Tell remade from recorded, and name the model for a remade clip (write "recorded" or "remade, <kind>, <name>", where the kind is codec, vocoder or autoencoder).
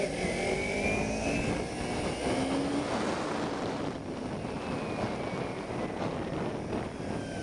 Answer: recorded